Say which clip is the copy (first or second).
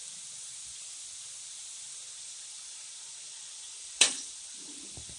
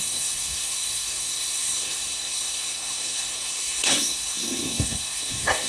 second